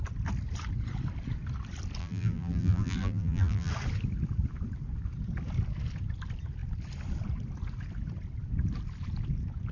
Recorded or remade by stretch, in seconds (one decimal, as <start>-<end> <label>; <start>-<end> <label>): 0.0-2.0 recorded; 2.0-3.7 remade; 3.7-9.7 recorded